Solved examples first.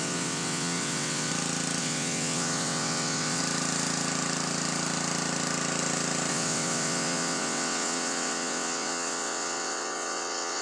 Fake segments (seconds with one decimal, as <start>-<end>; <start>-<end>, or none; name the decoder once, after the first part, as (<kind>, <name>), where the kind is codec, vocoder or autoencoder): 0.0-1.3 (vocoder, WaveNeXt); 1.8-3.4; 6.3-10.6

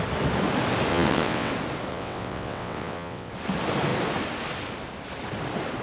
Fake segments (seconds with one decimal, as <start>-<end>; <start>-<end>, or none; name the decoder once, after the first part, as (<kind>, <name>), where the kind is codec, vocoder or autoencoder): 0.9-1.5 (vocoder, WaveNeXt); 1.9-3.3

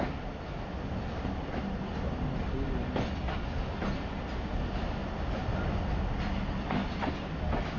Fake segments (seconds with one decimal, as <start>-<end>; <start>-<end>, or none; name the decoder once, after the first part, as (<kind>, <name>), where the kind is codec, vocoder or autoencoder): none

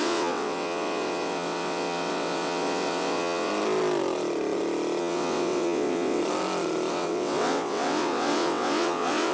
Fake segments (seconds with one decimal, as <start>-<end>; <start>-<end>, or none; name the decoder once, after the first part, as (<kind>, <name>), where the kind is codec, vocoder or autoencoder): 0.0-3.5 (vocoder, WaveNeXt); 5.0-6.2; 6.9-9.3

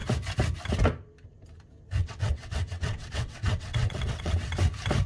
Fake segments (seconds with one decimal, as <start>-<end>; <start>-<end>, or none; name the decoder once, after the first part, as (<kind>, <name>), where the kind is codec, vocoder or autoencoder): 2.0-4.5 (vocoder, WaveNeXt)

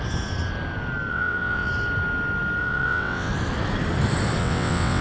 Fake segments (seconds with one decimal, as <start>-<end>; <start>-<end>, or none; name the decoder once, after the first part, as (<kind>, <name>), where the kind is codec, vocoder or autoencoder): 1.1-1.7 (vocoder, WaveNeXt); 2.6-3.3; 4.4-5.0

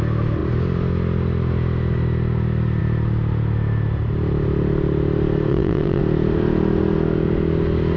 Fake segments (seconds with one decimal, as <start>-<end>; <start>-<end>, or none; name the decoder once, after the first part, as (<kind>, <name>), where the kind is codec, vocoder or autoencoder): 5.5-6.0 (vocoder, WaveNeXt)